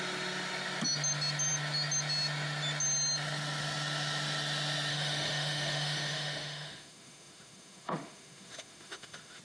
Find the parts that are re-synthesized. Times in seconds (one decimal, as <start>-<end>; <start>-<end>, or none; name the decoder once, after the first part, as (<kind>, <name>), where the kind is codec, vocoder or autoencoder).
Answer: 4.9-9.4 (autoencoder, DAC-VAE)